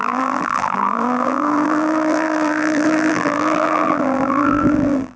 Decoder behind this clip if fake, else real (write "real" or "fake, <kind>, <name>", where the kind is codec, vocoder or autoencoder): fake, vocoder, BigVGAN v2